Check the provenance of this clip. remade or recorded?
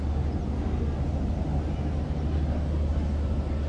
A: recorded